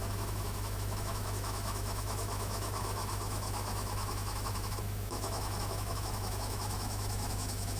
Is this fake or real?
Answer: fake